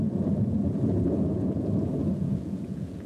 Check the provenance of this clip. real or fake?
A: fake